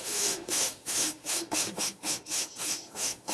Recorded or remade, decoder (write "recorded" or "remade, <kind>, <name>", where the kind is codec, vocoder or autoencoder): remade, autoencoder, DAC-VAE